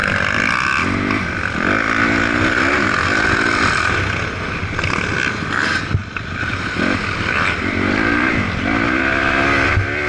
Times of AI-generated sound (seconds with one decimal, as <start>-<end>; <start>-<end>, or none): 6.0-9.0